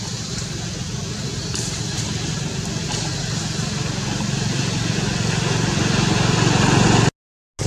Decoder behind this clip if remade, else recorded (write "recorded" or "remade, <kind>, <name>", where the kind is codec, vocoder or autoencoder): recorded